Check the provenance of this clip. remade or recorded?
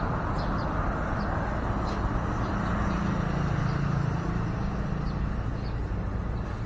recorded